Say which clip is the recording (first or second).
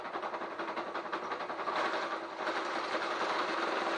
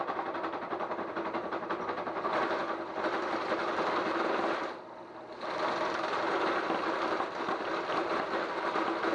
first